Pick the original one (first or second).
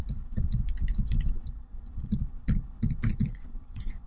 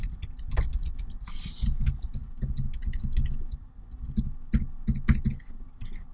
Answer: second